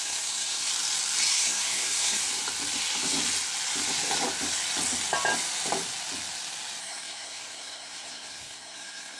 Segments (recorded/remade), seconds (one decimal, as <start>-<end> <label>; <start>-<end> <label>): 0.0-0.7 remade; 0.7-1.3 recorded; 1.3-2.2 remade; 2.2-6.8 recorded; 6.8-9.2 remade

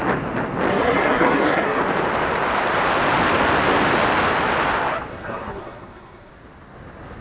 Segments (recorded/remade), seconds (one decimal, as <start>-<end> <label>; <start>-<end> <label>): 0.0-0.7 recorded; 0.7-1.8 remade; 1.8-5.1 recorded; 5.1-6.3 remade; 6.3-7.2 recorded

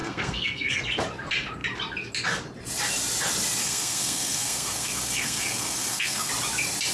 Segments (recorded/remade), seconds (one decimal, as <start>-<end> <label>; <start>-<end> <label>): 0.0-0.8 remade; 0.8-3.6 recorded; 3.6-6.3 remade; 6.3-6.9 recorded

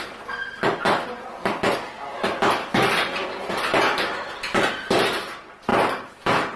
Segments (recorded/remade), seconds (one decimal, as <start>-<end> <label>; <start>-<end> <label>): 0.0-6.6 recorded

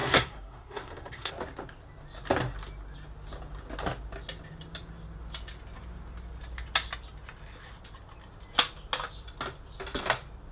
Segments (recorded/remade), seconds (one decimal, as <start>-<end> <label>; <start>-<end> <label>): 0.0-1.3 remade; 1.3-10.5 recorded

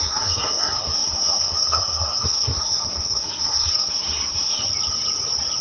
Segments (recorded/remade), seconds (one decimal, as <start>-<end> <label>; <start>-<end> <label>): 0.0-4.7 remade; 4.7-5.6 recorded

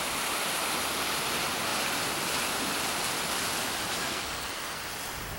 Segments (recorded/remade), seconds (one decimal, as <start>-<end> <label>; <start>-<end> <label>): 0.0-4.0 recorded; 4.0-4.8 remade; 4.8-5.4 recorded